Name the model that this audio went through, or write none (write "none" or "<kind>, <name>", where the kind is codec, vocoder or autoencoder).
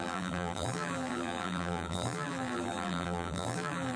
vocoder, BigVGAN v2